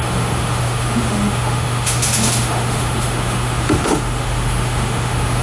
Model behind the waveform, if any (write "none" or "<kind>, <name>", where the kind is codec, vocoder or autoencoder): autoencoder, DAC-VAE